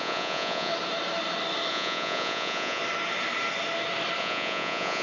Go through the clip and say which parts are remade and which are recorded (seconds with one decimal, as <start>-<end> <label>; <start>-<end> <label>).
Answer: 0.0-0.7 remade; 0.7-1.7 recorded; 1.7-2.8 remade; 2.8-4.2 recorded; 4.2-5.0 remade